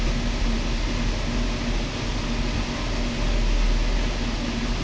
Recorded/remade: recorded